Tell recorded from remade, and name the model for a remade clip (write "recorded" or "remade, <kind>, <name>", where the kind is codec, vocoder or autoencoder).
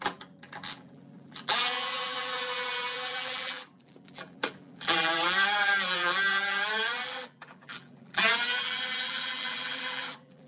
remade, vocoder, BigVGAN v2